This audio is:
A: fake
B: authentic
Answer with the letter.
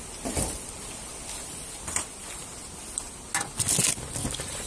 B